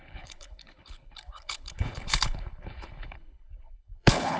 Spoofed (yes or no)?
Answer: yes